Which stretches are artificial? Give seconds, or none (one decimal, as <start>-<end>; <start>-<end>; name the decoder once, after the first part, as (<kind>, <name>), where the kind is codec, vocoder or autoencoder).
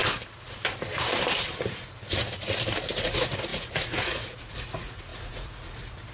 3.0-6.1 (vocoder, Vocos)